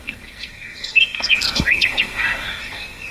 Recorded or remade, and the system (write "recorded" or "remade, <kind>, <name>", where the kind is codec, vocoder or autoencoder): remade, codec, SNAC